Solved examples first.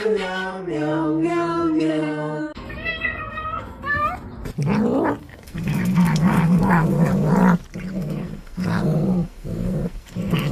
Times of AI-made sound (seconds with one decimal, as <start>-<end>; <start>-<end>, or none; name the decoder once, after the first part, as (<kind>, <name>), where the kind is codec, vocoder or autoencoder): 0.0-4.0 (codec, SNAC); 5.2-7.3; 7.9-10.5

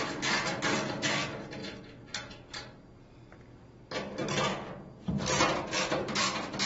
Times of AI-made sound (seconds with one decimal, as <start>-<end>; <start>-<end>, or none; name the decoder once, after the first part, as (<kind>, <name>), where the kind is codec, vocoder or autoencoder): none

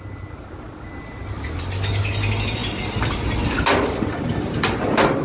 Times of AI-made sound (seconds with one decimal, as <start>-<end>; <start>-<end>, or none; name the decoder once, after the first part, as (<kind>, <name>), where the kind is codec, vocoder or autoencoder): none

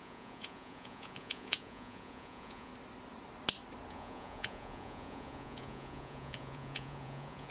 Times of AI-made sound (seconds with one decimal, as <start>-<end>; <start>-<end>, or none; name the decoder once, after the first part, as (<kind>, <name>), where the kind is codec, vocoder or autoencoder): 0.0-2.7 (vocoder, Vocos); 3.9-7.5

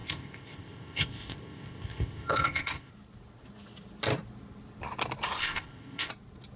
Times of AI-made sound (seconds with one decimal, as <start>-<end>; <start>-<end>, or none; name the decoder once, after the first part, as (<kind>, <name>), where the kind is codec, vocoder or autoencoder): 0.0-2.9 (codec, ZipCodec); 5.4-6.1

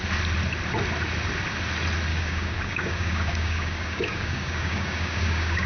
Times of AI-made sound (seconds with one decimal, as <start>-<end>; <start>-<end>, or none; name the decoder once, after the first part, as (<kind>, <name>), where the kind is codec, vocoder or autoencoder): 2.1-5.7 (codec, DAC)